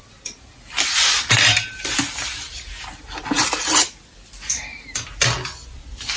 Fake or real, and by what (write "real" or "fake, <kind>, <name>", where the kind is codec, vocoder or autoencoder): real